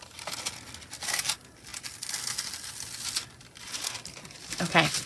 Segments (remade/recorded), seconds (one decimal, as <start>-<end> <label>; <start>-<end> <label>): 0.0-5.1 recorded

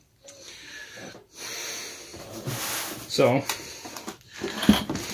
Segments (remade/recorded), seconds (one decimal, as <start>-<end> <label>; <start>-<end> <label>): 0.0-2.1 recorded; 2.1-2.6 remade; 2.6-5.1 recorded

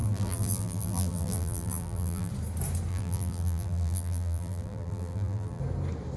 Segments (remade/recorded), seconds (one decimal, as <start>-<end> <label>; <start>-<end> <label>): 0.0-2.3 remade; 2.3-2.9 recorded; 2.9-5.6 remade; 5.6-6.2 recorded